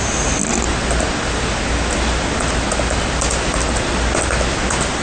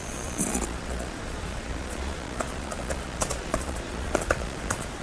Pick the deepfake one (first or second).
second